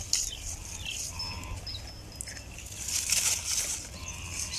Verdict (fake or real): real